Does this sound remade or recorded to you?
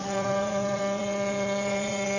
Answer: remade